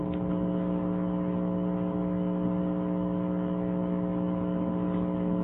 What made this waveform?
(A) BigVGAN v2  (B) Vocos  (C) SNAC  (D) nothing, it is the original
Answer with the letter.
D